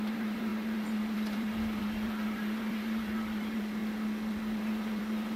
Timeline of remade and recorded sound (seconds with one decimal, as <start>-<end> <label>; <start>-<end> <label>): 0.0-3.8 remade; 3.8-4.3 recorded; 4.3-5.4 remade